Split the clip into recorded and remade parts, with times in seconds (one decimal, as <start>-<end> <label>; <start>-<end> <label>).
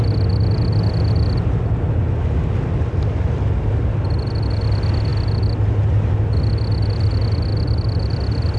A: 0.0-8.6 recorded